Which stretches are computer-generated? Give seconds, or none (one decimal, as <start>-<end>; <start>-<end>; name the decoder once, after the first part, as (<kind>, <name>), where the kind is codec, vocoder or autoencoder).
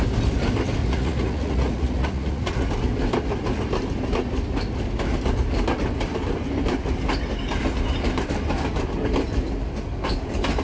0.8-2.7 (vocoder, Vocos)